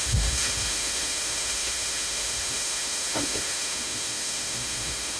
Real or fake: fake